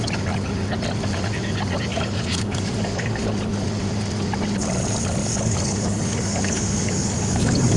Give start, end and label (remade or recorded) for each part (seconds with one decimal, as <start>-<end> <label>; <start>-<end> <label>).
0.0-1.9 recorded; 1.9-3.3 remade; 3.3-5.2 recorded; 5.2-7.8 remade